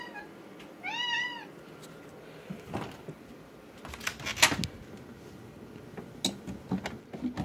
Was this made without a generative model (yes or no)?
yes